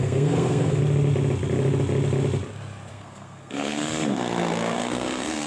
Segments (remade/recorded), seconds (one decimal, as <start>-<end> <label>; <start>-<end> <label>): 0.0-0.8 remade; 0.8-2.9 recorded; 2.9-5.5 remade